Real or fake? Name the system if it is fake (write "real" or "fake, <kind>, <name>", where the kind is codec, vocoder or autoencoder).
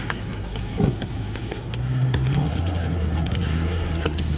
fake, codec, SNAC